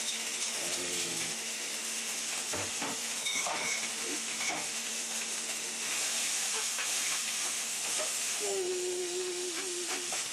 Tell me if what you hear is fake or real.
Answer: fake